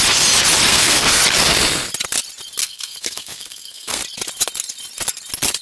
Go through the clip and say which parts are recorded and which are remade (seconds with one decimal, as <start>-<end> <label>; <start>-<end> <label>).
0.0-0.7 recorded; 0.7-1.2 remade; 1.2-2.6 recorded; 2.6-4.0 remade; 4.0-5.6 recorded